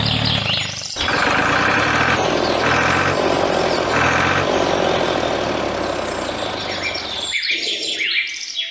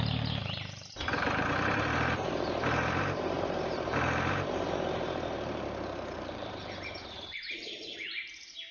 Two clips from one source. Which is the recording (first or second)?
first